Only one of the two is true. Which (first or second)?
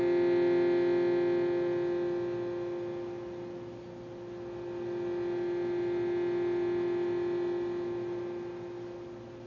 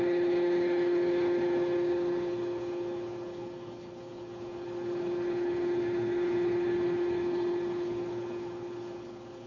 first